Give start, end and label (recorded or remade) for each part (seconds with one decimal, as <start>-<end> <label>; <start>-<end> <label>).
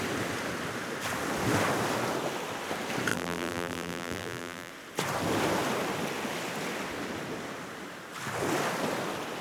0.0-3.1 recorded; 3.1-4.7 remade; 4.7-9.4 recorded